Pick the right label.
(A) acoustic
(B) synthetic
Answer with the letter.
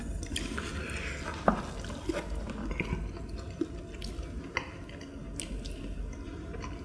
A